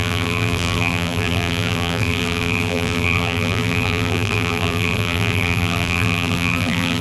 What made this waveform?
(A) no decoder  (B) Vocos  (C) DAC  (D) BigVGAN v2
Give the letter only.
D